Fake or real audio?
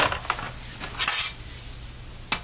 real